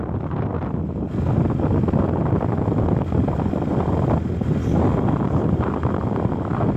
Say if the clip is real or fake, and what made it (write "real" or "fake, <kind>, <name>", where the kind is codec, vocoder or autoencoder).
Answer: real